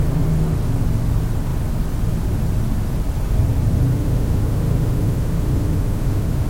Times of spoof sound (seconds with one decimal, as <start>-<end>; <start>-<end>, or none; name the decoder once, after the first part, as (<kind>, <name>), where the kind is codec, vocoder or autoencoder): 3.9-6.5 (autoencoder, DAC-VAE)